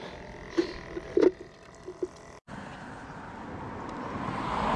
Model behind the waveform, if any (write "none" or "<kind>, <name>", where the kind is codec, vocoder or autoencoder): none